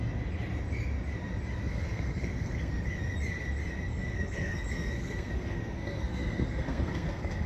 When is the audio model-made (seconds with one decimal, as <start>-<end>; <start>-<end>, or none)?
1.7-2.7; 3.9-7.5